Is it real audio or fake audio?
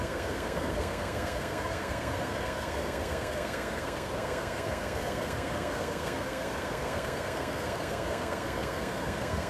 fake